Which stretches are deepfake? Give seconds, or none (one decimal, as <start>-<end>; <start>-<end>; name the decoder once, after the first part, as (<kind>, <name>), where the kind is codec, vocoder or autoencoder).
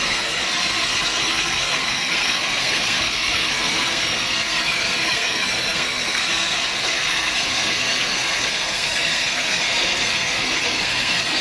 0.0-11.4 (codec, SNAC)